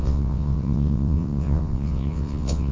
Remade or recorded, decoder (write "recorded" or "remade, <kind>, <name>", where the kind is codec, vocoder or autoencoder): remade, vocoder, WaveNeXt